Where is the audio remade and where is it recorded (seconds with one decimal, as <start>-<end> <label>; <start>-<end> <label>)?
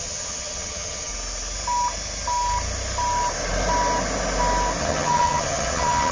0.0-1.1 remade; 1.1-4.8 recorded; 4.8-6.1 remade